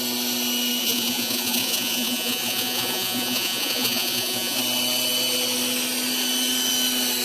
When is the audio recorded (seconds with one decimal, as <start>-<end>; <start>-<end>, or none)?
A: 0.0-0.8; 4.6-7.2